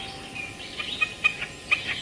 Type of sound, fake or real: real